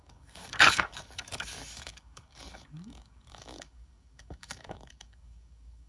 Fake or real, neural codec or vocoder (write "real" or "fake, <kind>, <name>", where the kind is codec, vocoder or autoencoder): fake, codec, DAC